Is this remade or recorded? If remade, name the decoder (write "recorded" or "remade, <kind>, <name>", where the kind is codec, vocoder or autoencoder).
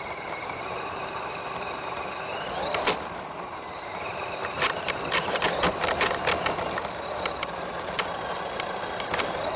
recorded